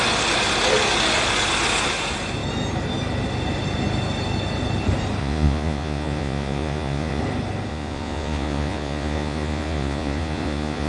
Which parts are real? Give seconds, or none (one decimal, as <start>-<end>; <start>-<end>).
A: 0.0-5.2; 7.2-7.7